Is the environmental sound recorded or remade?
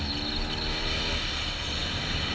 recorded